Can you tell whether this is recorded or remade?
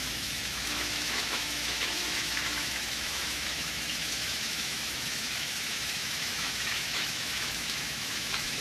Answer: remade